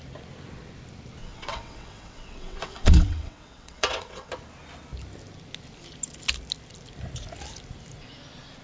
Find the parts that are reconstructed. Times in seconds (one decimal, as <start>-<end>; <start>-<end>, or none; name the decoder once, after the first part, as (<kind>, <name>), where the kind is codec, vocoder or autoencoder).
1.2-4.3 (vocoder, WaveNeXt)